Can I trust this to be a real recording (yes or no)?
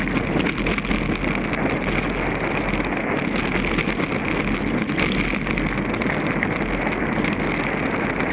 yes